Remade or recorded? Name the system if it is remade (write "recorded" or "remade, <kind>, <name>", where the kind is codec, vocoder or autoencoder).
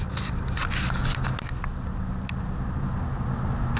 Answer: recorded